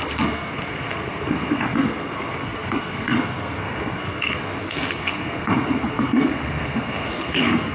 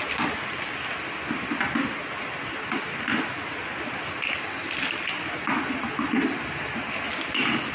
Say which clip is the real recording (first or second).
second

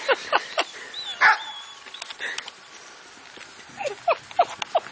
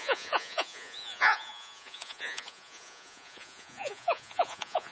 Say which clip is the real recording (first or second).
first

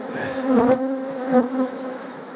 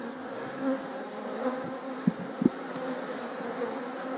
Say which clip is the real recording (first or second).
second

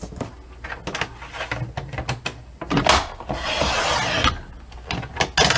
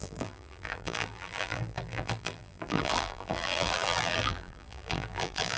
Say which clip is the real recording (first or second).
first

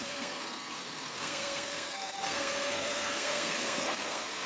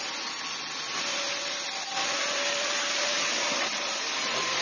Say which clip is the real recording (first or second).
second